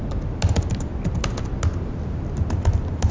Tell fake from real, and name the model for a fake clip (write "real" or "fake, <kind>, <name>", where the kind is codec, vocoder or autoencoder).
real